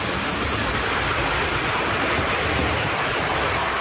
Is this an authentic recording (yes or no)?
yes